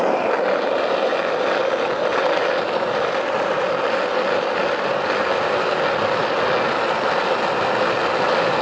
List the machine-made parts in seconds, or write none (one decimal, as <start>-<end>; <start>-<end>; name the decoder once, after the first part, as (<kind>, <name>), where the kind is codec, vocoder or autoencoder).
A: none